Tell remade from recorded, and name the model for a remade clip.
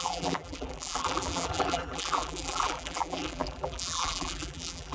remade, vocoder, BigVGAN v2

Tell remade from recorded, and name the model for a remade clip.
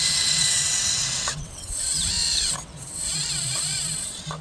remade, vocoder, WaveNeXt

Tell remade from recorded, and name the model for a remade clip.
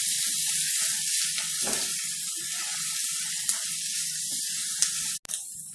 recorded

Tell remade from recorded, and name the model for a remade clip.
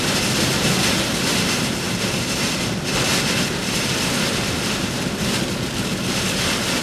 recorded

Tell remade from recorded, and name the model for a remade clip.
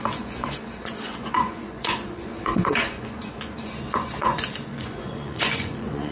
remade, vocoder, Vocos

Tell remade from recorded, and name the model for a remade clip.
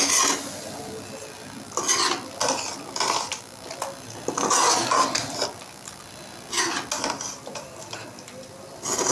recorded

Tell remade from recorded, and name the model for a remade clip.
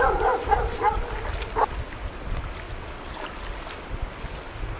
recorded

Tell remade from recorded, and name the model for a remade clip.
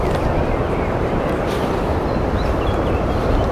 recorded